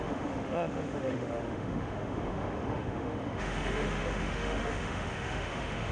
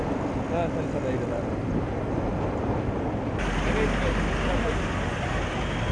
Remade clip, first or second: first